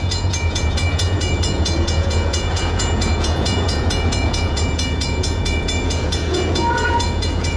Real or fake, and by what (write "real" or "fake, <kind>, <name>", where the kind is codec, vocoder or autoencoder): fake, vocoder, Vocos